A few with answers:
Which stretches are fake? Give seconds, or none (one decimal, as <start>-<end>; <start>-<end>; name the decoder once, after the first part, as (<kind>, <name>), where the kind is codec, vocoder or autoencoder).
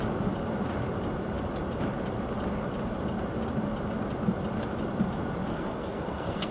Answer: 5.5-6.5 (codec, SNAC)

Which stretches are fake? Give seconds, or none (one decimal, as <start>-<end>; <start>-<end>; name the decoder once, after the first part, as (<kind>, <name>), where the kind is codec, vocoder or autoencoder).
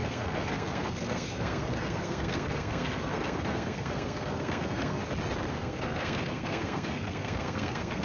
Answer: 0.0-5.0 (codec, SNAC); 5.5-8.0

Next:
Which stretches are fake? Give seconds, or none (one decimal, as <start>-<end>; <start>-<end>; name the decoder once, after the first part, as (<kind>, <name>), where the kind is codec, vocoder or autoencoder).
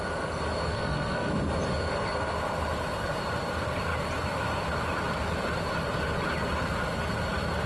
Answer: 0.7-1.3 (codec, SNAC)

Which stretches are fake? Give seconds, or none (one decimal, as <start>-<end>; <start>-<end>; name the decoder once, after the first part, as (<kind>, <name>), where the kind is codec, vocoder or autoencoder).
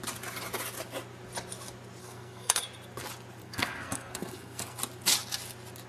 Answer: 2.0-2.6 (codec, SNAC); 3.4-4.8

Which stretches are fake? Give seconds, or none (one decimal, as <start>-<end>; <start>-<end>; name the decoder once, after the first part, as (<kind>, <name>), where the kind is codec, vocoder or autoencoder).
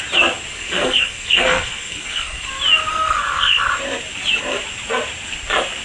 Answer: 0.5-2.5 (codec, SNAC); 2.9-3.7